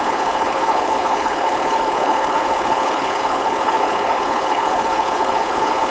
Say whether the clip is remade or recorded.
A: remade